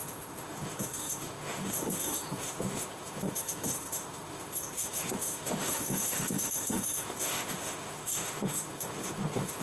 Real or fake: fake